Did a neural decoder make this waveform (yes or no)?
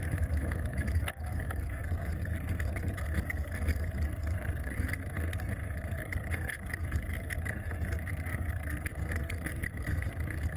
yes